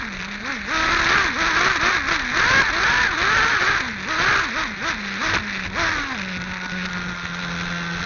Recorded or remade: recorded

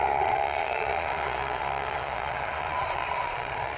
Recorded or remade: remade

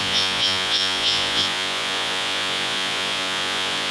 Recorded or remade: remade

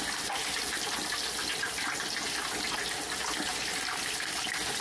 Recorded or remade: recorded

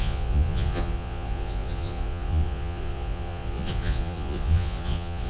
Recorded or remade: remade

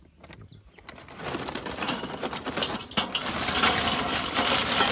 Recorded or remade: recorded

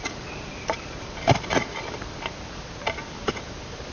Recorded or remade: recorded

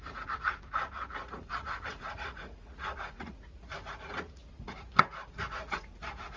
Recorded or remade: remade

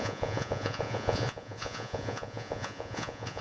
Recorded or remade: remade